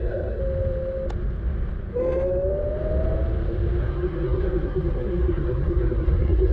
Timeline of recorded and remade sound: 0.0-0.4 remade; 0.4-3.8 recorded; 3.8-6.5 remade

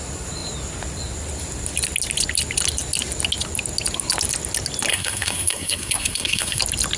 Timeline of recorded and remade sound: 0.0-4.9 recorded; 4.9-6.6 remade; 6.6-7.0 recorded

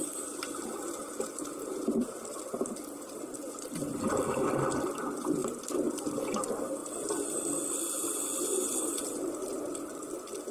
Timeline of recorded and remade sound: 0.0-10.5 recorded

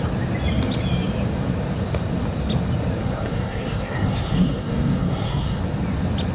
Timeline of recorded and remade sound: 0.0-3.0 recorded; 3.0-5.6 remade; 5.6-6.3 recorded

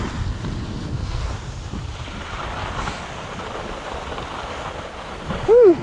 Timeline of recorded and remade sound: 0.0-0.6 recorded; 0.6-1.2 remade; 1.2-5.8 recorded

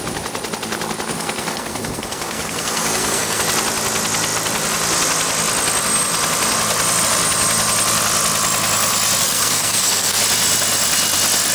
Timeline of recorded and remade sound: 0.0-1.1 recorded; 1.1-3.4 remade; 3.4-9.2 recorded; 9.2-10.2 remade; 10.2-11.5 recorded

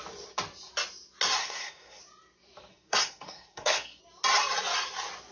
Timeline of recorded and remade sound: 0.0-1.4 recorded; 1.4-2.0 remade; 2.0-2.7 recorded; 2.7-4.0 remade; 4.0-5.3 recorded

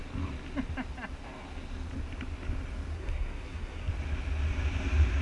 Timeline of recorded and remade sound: 0.0-2.9 recorded; 2.9-3.9 remade; 3.9-5.2 recorded